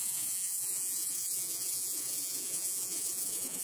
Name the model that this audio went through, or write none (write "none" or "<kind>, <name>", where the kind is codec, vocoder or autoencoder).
vocoder, Vocos